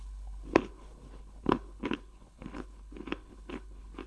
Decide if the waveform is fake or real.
fake